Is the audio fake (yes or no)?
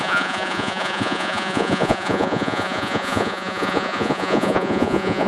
yes